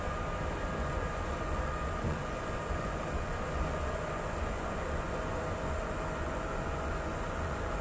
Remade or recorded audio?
remade